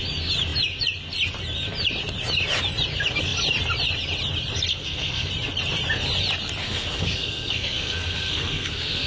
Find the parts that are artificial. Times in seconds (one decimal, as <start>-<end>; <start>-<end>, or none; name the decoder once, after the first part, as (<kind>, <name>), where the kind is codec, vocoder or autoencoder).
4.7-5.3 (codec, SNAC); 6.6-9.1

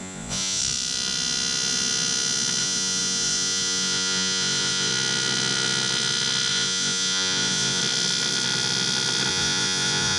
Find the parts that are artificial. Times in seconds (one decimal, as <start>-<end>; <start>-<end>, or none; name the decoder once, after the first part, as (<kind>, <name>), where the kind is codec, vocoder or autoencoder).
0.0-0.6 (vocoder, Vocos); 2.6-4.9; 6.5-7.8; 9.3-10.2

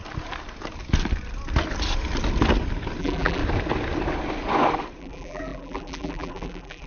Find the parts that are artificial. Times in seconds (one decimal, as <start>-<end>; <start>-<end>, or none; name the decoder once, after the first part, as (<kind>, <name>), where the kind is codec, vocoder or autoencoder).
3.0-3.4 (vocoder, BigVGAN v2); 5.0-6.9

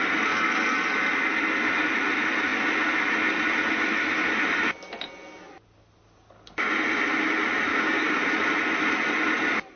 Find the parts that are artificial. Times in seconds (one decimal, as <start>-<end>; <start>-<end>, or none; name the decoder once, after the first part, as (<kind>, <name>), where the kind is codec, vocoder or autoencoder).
7.7-8.2 (codec, DAC)

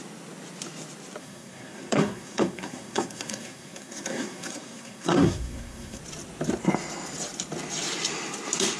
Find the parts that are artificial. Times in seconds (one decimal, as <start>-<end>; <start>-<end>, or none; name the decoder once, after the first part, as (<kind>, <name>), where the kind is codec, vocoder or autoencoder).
1.2-6.0 (codec, SNAC)

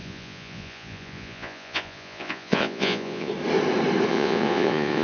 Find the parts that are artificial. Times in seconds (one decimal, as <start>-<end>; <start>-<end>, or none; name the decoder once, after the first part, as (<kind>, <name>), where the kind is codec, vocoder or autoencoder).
0.0-3.3 (vocoder, Vocos); 4.1-5.0

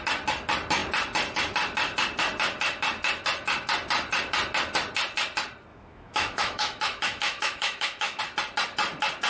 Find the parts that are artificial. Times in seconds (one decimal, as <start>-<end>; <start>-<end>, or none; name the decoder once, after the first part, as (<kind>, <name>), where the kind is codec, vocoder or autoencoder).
5.7-8.2 (autoencoder, DAC-VAE)